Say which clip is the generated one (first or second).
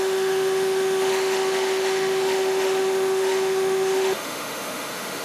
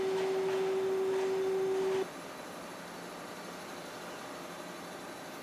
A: first